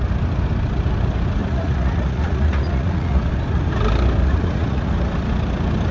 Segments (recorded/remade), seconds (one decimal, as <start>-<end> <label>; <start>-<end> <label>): 0.0-1.4 recorded; 1.4-3.3 remade; 3.3-4.2 recorded; 4.2-4.9 remade; 4.9-5.9 recorded